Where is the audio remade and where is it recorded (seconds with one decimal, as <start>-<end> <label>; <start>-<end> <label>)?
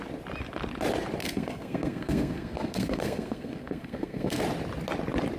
0.0-1.2 recorded; 1.2-4.4 remade; 4.4-5.4 recorded